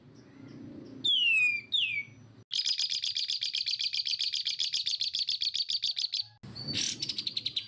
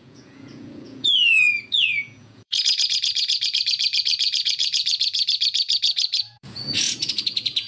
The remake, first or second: second